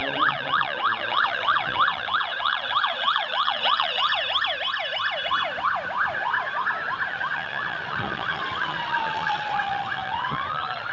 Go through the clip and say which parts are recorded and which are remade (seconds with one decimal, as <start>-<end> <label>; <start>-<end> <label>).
0.0-4.1 remade; 4.1-7.1 recorded; 7.1-10.9 remade